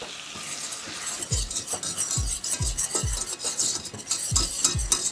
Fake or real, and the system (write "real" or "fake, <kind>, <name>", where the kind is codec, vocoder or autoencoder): real